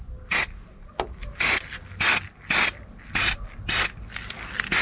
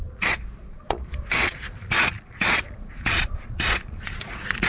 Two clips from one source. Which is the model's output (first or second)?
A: second